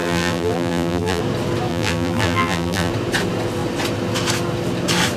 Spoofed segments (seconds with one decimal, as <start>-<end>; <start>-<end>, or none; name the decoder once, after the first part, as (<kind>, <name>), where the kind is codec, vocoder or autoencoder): 0.0-1.2 (vocoder, BigVGAN v2); 1.7-2.9